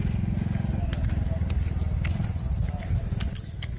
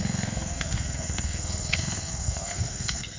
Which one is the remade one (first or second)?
second